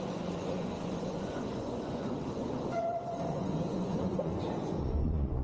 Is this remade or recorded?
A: remade